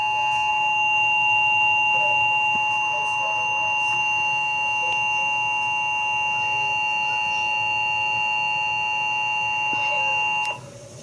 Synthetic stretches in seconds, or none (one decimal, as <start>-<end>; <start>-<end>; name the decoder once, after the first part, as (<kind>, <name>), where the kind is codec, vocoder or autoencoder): 0.5-4.0 (autoencoder, DAC-VAE)